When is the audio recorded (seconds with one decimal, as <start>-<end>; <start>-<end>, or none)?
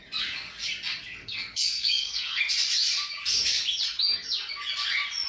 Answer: 0.0-1.2; 2.4-5.3